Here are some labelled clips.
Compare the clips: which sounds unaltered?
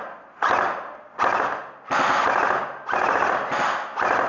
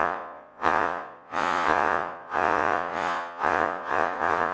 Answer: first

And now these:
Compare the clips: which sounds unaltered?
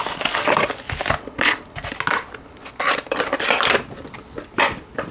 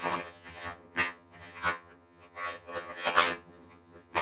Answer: first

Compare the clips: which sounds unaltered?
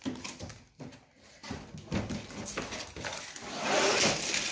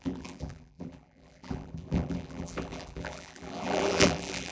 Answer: first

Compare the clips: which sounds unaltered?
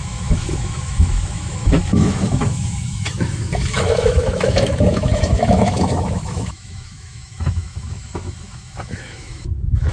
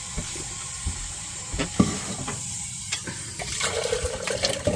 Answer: second